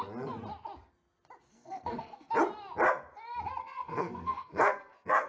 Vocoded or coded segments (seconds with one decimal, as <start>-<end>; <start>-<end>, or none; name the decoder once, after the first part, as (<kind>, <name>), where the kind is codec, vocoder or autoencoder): 1.5-2.3 (codec, SNAC); 3.6-5.3